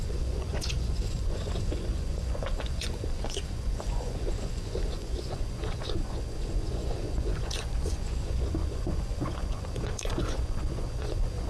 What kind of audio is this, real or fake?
fake